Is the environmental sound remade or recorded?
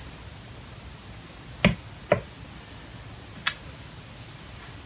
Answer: recorded